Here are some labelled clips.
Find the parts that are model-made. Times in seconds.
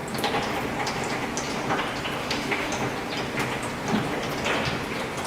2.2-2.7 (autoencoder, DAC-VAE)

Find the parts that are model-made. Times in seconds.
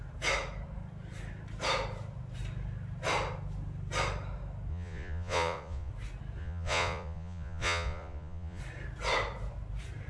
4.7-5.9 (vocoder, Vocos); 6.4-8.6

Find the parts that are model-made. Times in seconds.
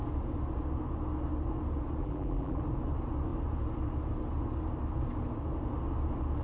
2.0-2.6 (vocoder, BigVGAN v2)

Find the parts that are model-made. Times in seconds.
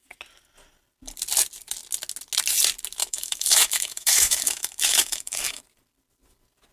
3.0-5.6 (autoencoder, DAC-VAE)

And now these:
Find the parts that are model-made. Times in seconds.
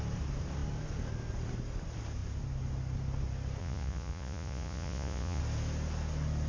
3.6-5.4 (vocoder, Vocos)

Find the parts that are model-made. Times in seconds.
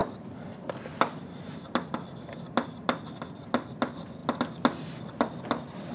none